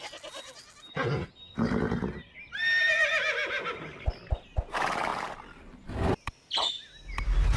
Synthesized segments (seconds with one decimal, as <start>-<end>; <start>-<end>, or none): none